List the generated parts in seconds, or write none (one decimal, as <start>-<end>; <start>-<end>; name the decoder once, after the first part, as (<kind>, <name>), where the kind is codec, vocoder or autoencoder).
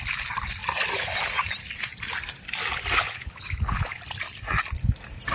3.0-4.0 (codec, HILCodec)